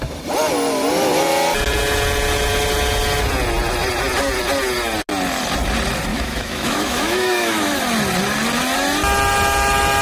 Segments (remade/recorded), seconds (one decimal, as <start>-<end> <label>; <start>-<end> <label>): 0.0-6.1 recorded; 6.1-7.8 remade; 7.8-10.0 recorded

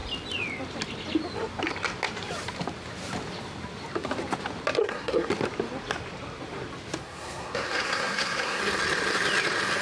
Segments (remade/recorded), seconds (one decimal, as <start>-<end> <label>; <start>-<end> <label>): 0.0-4.8 recorded; 4.8-5.3 remade; 5.3-7.0 recorded; 7.0-8.6 remade; 8.6-9.8 recorded

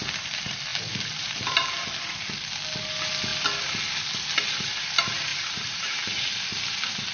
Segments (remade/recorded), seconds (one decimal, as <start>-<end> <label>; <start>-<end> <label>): 0.0-0.7 recorded; 0.7-1.9 remade; 1.9-5.3 recorded; 5.3-6.3 remade; 6.3-7.1 recorded

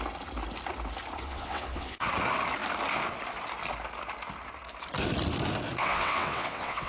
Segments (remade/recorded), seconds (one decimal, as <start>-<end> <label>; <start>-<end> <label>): 0.0-1.2 recorded; 1.2-2.1 remade; 2.1-5.8 recorded; 5.8-6.9 remade

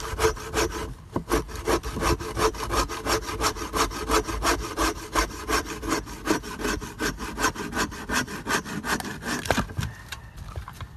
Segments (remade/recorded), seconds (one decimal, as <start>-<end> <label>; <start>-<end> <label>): 0.0-4.5 recorded; 4.5-5.6 remade; 5.6-11.0 recorded

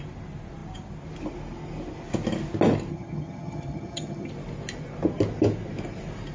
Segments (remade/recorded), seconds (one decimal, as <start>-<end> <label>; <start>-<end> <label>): 0.0-2.9 recorded; 2.9-4.3 remade; 4.3-6.3 recorded

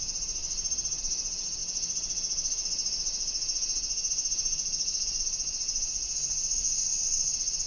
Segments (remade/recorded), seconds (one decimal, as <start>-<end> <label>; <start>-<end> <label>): 0.0-7.7 recorded

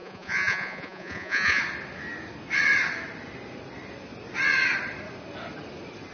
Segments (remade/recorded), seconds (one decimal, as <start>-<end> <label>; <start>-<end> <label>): 0.0-1.6 remade; 1.6-6.1 recorded